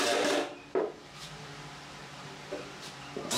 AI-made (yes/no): yes